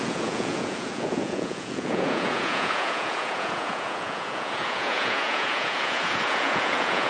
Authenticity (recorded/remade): remade